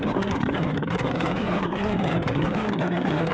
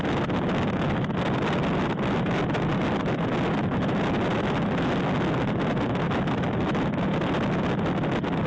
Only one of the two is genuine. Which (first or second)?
second